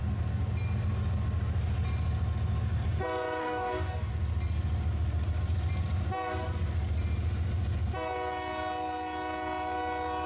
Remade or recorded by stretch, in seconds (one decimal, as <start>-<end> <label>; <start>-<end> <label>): 0.0-3.4 recorded; 3.4-4.1 remade; 4.1-10.3 recorded